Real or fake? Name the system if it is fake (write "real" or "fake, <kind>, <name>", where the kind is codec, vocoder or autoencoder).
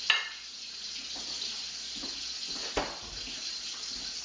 real